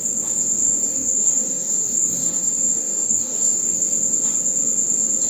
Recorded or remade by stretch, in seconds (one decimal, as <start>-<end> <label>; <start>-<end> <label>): 0.0-0.6 recorded; 0.6-3.8 remade; 3.8-5.3 recorded